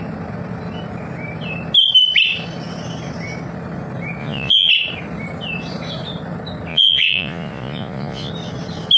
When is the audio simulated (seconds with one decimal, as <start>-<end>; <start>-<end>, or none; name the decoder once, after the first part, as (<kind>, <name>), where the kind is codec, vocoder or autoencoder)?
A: 4.2-4.7 (vocoder, Vocos); 6.7-8.3